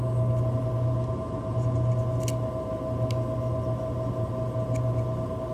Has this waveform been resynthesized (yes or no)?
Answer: no